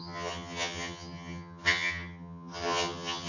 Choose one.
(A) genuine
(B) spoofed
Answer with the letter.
B